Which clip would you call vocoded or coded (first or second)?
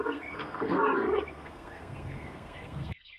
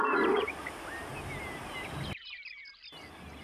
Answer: first